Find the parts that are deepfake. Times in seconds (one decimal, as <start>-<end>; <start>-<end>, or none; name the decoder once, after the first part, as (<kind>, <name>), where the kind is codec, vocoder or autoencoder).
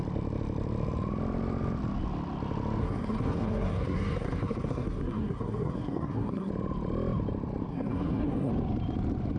2.8-6.5 (codec, SNAC); 7.7-8.5